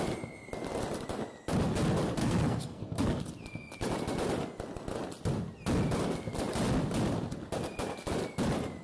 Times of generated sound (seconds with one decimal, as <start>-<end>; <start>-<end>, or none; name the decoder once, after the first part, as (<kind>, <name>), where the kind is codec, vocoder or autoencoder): 2.2-3.2 (codec, SNAC)